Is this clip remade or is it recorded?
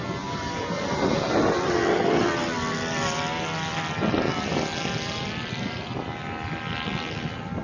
remade